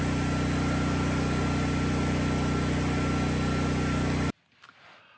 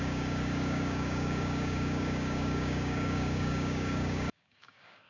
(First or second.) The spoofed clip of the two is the second